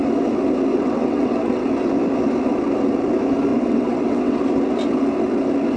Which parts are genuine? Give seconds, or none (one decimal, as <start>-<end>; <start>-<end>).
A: 0.0-0.7; 1.6-3.5; 4.4-5.8